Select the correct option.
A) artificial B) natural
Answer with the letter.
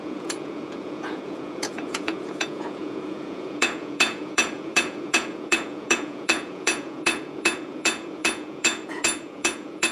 A